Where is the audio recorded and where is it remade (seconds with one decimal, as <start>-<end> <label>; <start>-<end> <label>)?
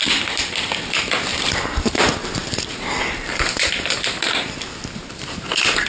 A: 0.0-1.3 recorded; 1.3-1.9 remade; 1.9-5.9 recorded